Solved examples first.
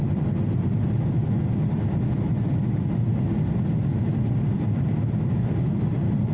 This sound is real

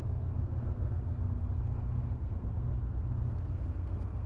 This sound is fake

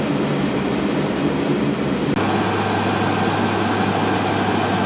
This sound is real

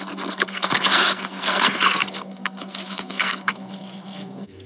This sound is fake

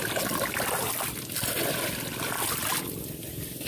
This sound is real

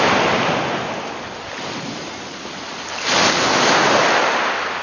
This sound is real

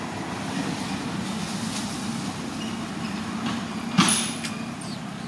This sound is real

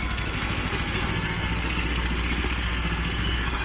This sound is fake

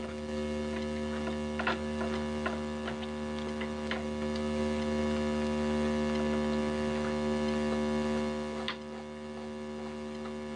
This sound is real